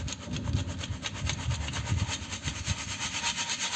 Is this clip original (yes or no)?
yes